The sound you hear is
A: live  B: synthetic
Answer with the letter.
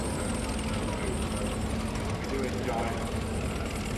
A